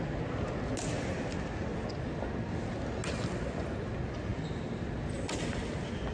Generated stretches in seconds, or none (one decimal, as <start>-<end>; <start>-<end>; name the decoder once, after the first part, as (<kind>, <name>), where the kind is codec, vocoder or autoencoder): none